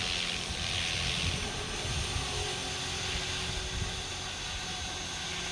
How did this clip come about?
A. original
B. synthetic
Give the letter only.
A